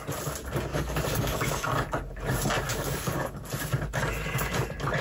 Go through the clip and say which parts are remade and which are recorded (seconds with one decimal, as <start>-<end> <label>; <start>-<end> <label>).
0.0-0.7 recorded; 0.7-1.7 remade; 1.7-2.7 recorded; 2.7-3.4 remade; 3.4-5.0 recorded